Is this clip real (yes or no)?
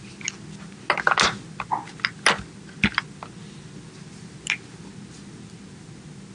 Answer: yes